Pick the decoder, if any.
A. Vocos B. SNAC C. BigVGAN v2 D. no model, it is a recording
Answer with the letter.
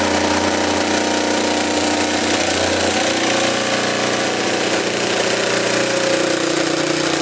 D